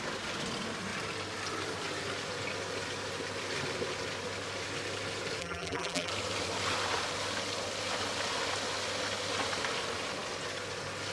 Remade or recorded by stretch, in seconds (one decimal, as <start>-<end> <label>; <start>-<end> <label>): 0.0-5.4 recorded; 5.4-6.1 remade; 6.1-11.1 recorded